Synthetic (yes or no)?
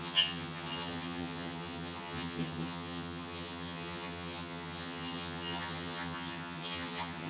yes